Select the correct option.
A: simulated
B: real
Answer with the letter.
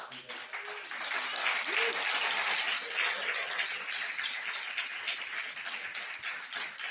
B